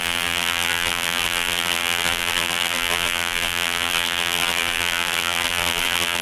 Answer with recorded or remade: remade